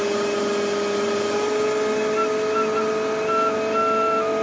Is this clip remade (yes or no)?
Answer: no